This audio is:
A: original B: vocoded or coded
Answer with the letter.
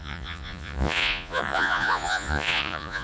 B